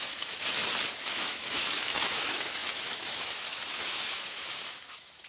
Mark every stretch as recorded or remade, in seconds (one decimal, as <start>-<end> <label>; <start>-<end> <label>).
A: 0.0-0.6 remade; 0.6-1.1 recorded; 1.1-5.3 remade